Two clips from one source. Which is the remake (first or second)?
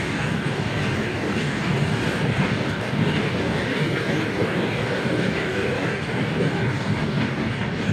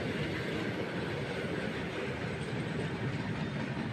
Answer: first